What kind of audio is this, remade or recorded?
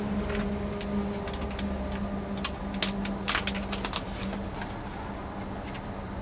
recorded